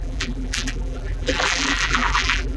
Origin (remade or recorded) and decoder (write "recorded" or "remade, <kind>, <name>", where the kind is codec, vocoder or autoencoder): remade, vocoder, BigVGAN v2